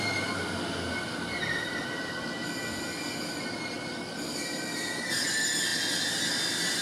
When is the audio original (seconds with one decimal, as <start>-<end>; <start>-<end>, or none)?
0.0-6.8